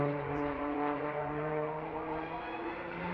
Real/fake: fake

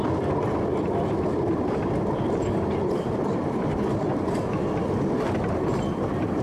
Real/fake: real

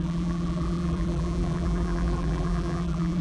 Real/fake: fake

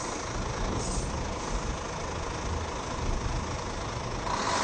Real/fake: real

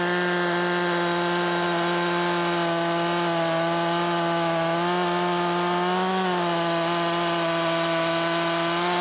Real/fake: real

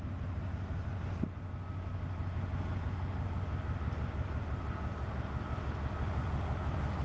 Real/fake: real